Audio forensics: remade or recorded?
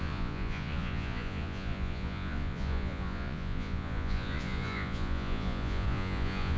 remade